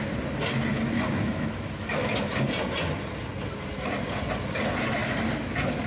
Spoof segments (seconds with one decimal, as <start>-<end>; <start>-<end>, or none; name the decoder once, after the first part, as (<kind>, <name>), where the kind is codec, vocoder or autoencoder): 0.7-2.3 (autoencoder, DAC-VAE)